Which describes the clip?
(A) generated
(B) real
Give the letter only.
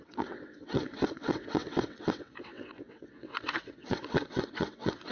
A